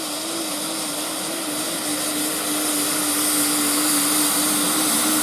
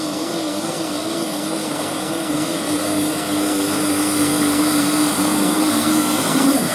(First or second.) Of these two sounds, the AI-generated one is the second